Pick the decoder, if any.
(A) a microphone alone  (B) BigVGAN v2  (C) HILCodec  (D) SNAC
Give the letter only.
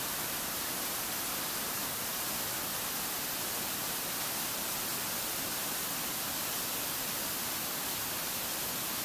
A